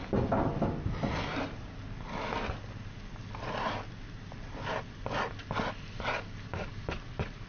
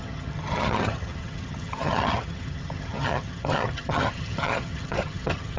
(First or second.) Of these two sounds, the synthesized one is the second